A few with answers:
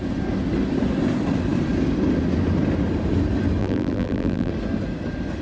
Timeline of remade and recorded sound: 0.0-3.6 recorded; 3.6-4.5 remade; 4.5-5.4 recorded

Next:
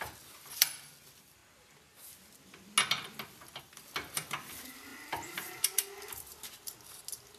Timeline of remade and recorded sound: 0.0-1.4 remade; 1.4-3.6 recorded; 3.6-6.3 remade; 6.3-7.4 recorded

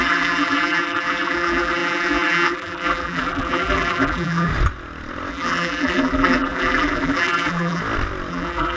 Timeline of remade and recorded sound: 0.0-4.5 remade; 4.5-5.3 recorded; 5.3-7.8 remade; 7.8-8.3 recorded; 8.3-8.8 remade

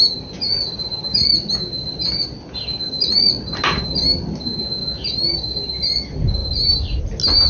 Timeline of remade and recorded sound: 0.0-1.8 recorded; 1.8-3.1 remade; 3.1-4.8 recorded; 4.8-5.8 remade; 5.8-6.4 recorded; 6.4-7.0 remade; 7.0-7.5 recorded

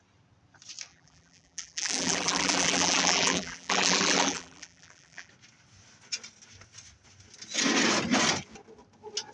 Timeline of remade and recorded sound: 0.0-0.9 recorded; 0.9-5.3 remade; 5.3-9.3 recorded

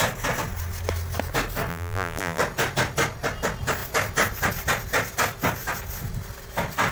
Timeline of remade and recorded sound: 0.0-1.7 recorded; 1.7-2.4 remade; 2.4-6.9 recorded